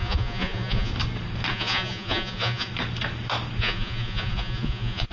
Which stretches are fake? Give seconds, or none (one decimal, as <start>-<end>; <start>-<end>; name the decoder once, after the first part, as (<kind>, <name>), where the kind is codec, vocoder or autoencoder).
0.0-0.9 (vocoder, Vocos); 1.5-2.7; 3.6-5.1